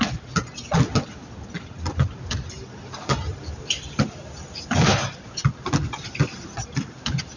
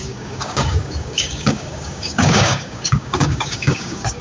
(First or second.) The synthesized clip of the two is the second